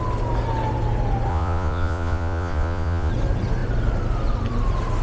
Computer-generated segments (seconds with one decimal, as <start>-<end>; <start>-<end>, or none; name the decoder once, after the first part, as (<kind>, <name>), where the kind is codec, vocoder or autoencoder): 1.3-3.1 (vocoder, Vocos)